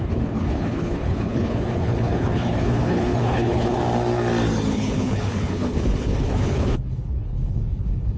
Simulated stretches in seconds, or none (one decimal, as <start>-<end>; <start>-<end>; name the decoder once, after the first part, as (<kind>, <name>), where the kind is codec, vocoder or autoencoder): 0.0-3.8 (codec, HILCodec); 4.7-8.2